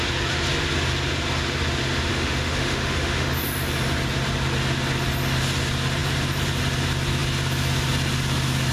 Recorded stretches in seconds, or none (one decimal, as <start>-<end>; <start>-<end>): 0.0-2.1; 3.3-8.7